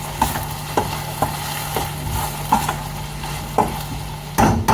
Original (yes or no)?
yes